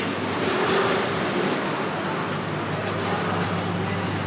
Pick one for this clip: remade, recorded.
recorded